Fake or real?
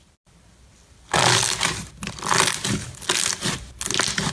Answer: real